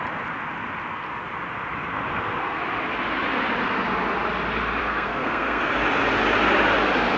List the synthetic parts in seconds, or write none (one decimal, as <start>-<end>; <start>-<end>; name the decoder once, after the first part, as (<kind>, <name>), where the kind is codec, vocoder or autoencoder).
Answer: 2.1-2.6 (codec, SNAC); 4.8-5.6